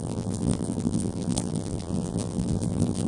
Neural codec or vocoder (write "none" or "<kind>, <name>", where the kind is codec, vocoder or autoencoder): vocoder, BigVGAN v2